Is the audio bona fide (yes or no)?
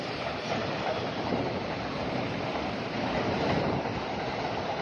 no